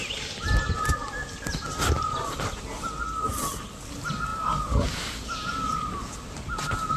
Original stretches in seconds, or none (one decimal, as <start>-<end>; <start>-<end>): 0.0-7.0